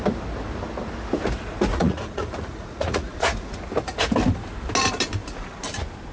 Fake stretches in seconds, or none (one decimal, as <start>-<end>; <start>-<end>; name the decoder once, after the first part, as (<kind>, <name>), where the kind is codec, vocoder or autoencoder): 1.7-3.6 (vocoder, Vocos)